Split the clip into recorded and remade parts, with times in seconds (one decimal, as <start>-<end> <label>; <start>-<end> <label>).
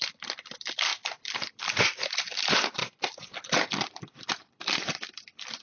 0.0-2.8 remade; 2.8-4.5 recorded; 4.5-5.6 remade